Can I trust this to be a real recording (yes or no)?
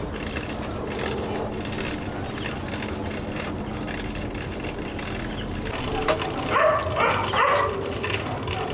yes